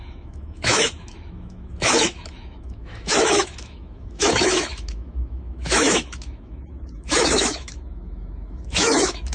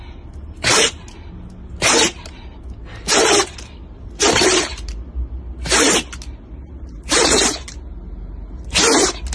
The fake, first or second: first